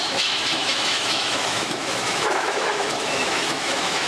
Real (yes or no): no